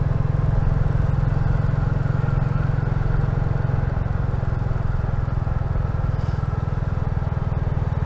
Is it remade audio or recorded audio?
recorded